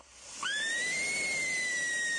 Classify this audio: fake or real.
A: real